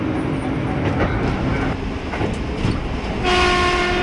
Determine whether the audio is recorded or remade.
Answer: recorded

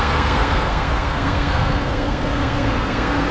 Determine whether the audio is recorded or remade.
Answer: remade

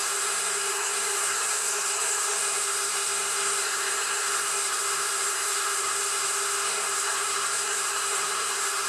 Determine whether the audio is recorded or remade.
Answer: remade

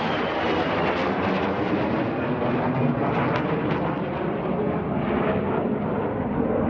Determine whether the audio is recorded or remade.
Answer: recorded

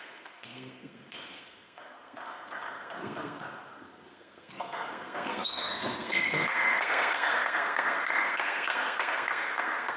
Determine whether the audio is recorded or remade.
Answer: remade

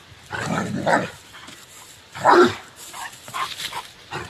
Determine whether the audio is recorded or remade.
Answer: recorded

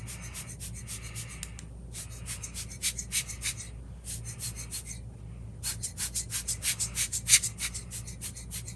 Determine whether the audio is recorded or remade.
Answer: recorded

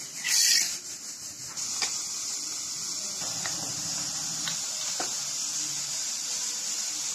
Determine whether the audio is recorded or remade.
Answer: recorded